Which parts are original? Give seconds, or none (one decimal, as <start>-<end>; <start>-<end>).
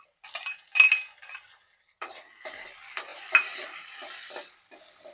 0.0-5.1